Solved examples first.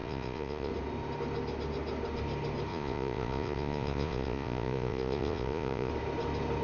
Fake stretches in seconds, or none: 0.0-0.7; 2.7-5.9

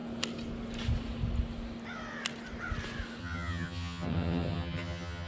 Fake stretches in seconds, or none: 3.2-5.3

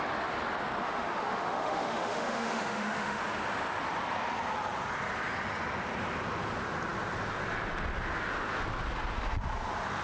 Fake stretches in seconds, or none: 0.8-3.2

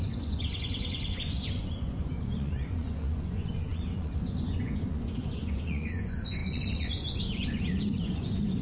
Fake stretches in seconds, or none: 0.0-8.6

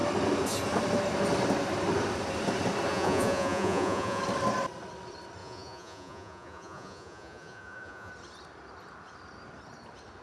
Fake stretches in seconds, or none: 2.9-4.2; 5.4-8.1